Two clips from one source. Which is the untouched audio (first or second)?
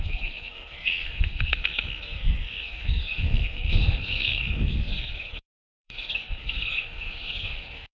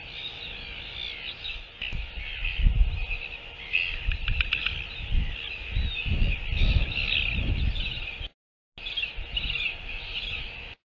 second